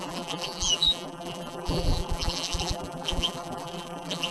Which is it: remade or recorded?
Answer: remade